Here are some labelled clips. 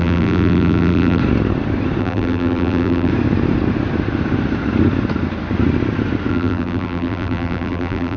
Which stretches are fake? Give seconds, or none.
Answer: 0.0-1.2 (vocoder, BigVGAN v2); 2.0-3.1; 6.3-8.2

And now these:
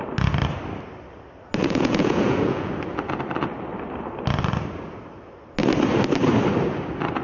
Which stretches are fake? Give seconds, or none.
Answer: 1.6-2.7 (vocoder, Vocos)

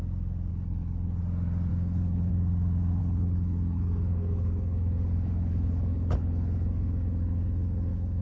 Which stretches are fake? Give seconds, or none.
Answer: 0.5-1.2 (codec, HILCodec); 1.7-2.3; 3.0-8.2